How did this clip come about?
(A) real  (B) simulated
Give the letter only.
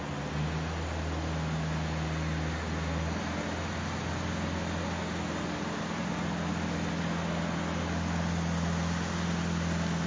A